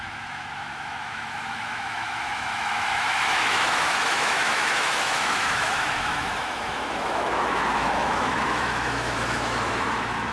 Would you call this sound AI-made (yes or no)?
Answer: yes